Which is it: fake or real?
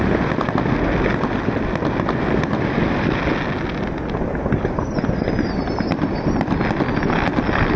real